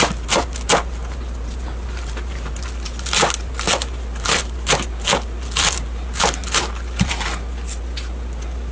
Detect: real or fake real